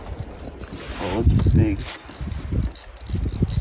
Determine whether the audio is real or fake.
real